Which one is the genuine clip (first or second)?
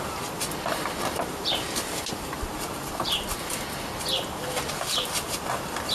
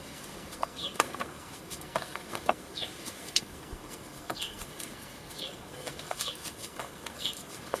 first